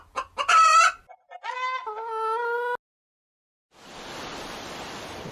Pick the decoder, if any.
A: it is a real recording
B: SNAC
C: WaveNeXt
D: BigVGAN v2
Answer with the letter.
A